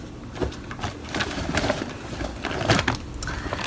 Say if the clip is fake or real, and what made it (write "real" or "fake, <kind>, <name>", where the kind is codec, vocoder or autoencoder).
real